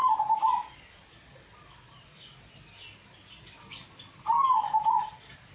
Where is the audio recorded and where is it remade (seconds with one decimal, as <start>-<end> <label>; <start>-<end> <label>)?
0.0-5.5 remade

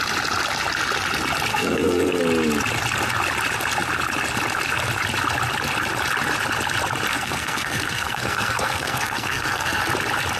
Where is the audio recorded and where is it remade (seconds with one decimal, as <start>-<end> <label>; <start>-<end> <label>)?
0.0-1.5 recorded; 1.5-2.2 remade; 2.2-7.1 recorded; 7.1-9.8 remade; 9.8-10.4 recorded

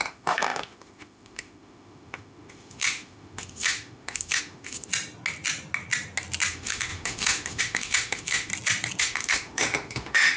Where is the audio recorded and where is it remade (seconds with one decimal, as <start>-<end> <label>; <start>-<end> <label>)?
0.0-4.9 remade; 4.9-6.5 recorded; 6.5-8.5 remade; 8.5-9.0 recorded; 9.0-10.4 remade

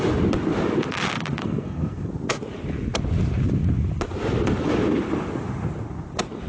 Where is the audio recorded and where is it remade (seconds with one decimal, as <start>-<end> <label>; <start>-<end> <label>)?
0.0-1.4 recorded; 1.4-2.1 remade; 2.1-6.5 recorded